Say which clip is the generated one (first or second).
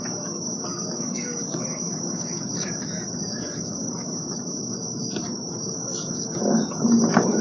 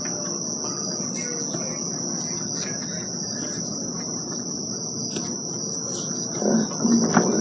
first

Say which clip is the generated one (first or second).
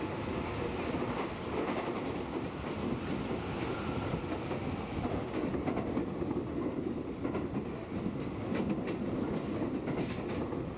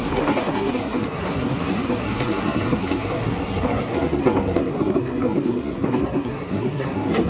second